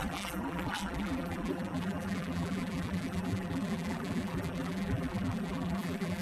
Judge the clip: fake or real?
fake